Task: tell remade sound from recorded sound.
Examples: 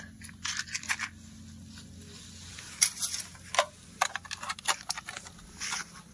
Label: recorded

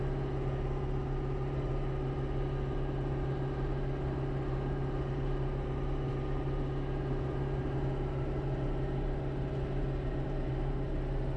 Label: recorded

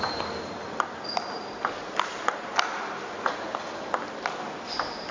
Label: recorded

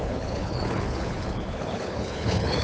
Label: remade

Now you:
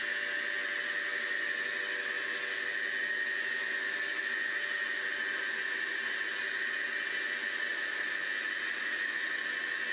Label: recorded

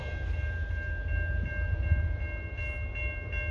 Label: recorded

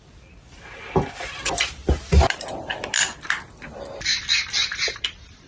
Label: recorded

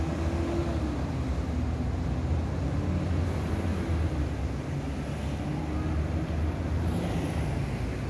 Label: recorded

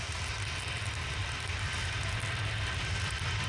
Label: recorded